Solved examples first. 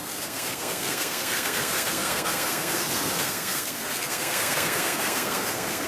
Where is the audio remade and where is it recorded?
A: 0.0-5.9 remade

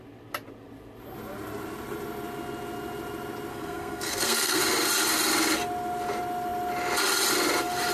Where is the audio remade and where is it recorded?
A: 0.0-3.5 recorded; 3.5-4.6 remade; 4.6-7.9 recorded

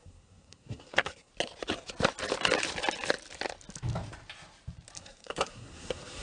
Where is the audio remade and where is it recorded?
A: 0.0-1.3 remade; 1.3-5.0 recorded; 5.0-6.2 remade